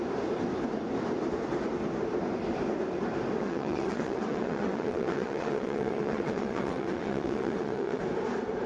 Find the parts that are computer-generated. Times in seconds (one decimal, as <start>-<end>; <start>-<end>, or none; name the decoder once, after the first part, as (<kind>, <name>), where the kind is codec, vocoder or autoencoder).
3.4-8.0 (vocoder, WaveNeXt)